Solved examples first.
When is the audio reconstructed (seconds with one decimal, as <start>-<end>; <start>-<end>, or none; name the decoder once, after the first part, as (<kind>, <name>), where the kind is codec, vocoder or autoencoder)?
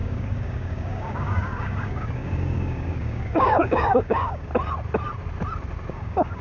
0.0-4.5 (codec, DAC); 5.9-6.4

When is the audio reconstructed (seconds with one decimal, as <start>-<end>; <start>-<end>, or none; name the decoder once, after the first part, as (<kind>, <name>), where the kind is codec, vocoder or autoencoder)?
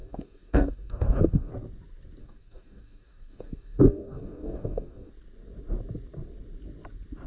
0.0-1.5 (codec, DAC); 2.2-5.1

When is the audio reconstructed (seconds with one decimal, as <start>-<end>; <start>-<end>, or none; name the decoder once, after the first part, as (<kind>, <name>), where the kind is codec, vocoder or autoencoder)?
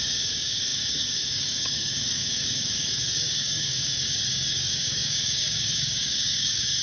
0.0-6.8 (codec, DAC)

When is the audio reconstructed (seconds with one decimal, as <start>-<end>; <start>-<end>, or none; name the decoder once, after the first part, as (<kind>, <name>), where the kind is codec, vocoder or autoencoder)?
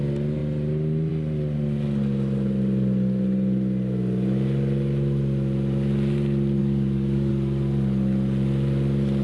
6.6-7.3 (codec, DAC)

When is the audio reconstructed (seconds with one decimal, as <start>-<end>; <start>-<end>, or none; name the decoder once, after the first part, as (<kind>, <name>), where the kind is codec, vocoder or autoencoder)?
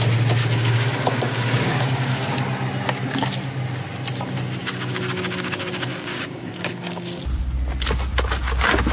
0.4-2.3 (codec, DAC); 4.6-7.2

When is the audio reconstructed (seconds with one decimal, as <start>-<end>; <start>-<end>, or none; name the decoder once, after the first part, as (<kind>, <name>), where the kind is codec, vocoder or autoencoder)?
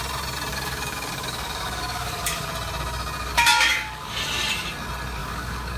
0.5-2.5 (codec, DAC); 3.3-4.1; 5.2-5.8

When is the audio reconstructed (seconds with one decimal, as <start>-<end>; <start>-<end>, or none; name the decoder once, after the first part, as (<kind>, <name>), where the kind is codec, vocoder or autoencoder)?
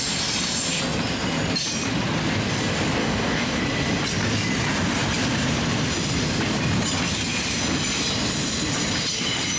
3.0-3.6 (codec, DAC)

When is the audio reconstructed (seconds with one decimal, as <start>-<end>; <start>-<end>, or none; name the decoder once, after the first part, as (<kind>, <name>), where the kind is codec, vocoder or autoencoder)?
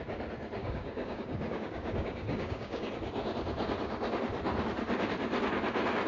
0.6-2.9 (codec, DAC)